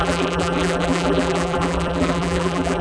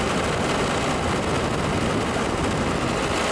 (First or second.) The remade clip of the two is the first